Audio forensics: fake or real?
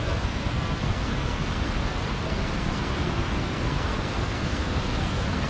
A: fake